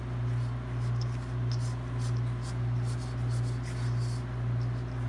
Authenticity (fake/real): real